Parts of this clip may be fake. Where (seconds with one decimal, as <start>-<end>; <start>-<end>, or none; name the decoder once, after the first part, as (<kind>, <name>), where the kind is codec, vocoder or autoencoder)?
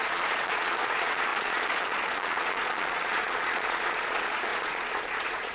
0.0-5.5 (vocoder, Vocos)